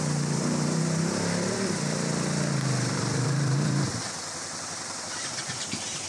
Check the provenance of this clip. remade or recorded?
remade